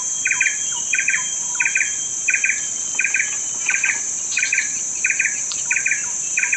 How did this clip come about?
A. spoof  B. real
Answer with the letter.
A